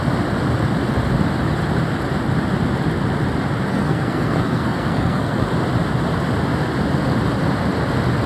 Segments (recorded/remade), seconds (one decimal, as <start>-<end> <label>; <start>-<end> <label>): 0.0-3.7 recorded; 3.7-5.4 remade; 5.4-8.3 recorded